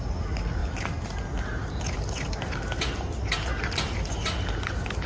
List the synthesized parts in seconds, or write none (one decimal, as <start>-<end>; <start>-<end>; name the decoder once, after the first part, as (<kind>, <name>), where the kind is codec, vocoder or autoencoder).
none